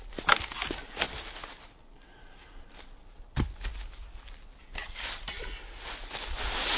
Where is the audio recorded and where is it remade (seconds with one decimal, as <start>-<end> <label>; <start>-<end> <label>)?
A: 0.0-6.8 recorded